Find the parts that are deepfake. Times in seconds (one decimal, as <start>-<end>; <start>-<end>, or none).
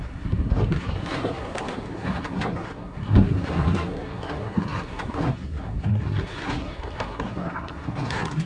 0.0-8.5